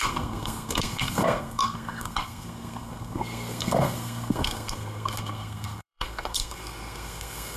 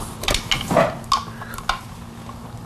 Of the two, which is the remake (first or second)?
first